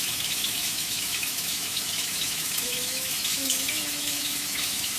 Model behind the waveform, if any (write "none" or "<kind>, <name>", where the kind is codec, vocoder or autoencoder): autoencoder, DAC-VAE